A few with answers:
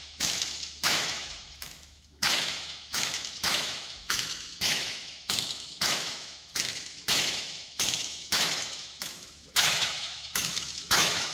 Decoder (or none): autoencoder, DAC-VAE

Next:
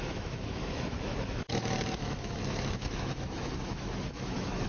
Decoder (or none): autoencoder, DAC-VAE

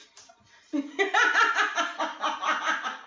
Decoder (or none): none